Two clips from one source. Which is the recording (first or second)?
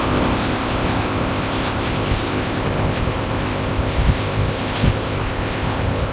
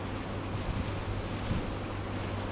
second